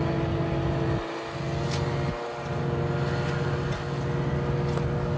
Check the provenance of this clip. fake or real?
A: real